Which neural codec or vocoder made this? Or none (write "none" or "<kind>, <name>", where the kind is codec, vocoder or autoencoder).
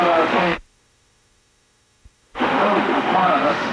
autoencoder, DAC-VAE